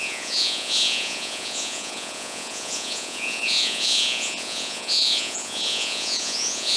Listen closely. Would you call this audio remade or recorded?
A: remade